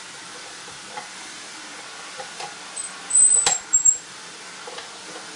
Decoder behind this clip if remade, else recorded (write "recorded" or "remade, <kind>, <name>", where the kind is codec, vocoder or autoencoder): remade, vocoder, BigVGAN v2